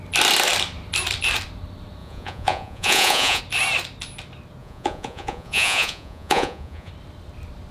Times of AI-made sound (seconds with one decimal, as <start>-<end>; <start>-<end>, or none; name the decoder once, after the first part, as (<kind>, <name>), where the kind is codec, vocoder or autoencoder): 2.0-3.4 (vocoder, Vocos); 4.6-6.9